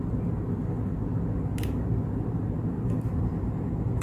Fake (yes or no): no